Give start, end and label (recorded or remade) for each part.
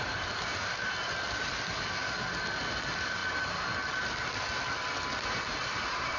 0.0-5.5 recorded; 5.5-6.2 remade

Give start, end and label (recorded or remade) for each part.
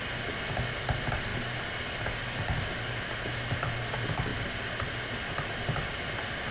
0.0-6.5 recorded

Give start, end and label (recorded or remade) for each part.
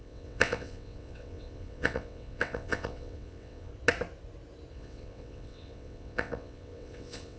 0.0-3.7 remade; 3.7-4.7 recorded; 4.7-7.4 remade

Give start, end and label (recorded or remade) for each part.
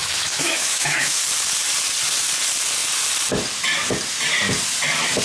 0.0-1.2 remade; 1.2-5.2 recorded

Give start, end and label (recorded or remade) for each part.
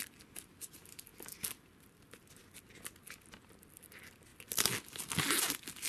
0.0-5.9 recorded